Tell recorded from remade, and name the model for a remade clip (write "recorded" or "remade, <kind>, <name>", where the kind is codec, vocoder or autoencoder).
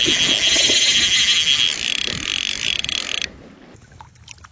recorded